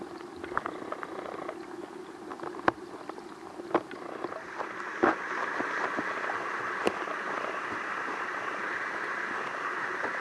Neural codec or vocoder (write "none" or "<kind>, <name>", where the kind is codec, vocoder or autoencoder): none